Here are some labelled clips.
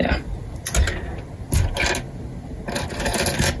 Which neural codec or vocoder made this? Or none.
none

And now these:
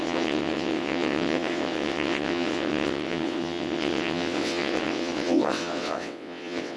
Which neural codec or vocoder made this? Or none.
vocoder, WaveNeXt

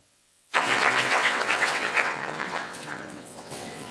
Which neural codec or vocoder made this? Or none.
vocoder, WaveNeXt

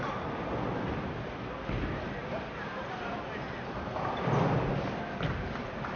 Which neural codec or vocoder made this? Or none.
none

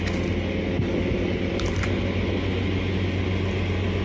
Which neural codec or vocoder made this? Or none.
none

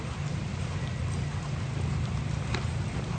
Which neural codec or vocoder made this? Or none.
none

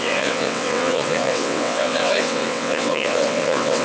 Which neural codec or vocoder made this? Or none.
vocoder, WaveNeXt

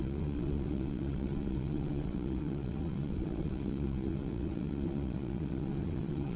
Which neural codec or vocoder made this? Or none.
vocoder, WaveNeXt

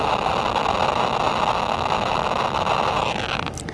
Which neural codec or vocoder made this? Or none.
none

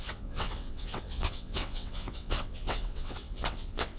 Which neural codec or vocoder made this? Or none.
vocoder, WaveNeXt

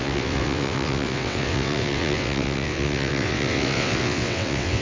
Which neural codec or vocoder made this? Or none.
vocoder, WaveNeXt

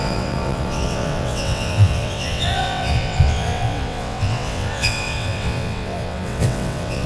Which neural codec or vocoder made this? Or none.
vocoder, WaveNeXt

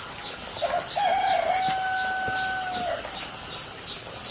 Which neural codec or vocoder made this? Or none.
none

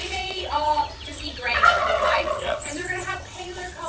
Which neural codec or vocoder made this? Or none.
vocoder, WaveNeXt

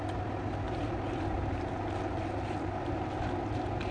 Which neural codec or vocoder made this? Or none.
none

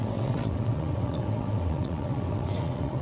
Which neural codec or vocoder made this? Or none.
vocoder, WaveNeXt